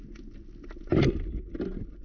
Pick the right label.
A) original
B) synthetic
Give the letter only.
A